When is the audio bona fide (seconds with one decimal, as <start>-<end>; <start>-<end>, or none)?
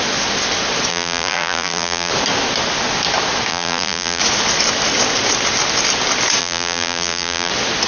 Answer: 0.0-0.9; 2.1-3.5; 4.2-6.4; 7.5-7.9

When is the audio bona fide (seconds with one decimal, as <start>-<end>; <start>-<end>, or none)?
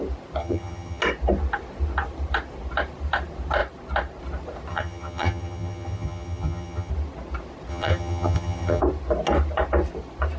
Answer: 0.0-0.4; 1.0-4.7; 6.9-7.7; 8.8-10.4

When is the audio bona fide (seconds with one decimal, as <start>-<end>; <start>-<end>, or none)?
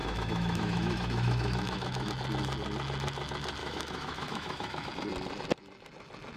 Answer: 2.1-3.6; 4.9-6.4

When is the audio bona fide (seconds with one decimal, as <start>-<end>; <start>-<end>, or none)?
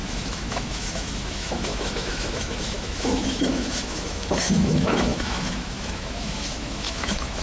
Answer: none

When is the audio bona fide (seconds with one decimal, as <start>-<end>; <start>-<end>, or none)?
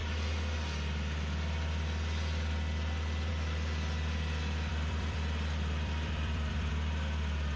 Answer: 0.0-4.7; 6.7-7.6